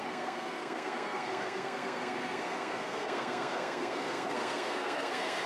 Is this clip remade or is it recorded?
remade